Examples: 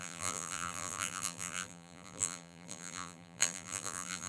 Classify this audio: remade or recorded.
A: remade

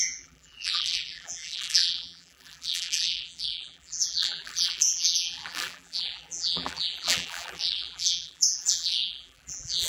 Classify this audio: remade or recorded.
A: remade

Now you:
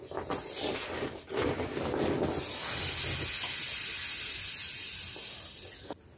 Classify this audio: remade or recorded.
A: recorded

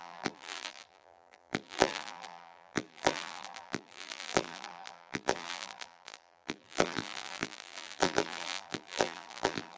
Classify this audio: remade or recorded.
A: remade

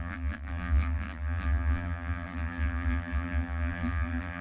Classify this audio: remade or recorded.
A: remade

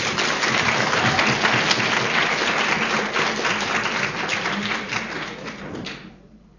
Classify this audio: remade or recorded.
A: recorded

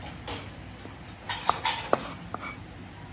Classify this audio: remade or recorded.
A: recorded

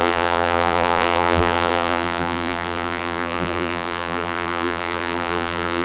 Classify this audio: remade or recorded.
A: remade